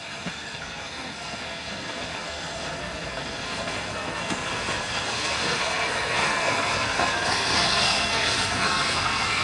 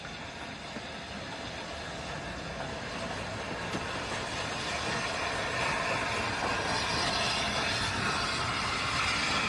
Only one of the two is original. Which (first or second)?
second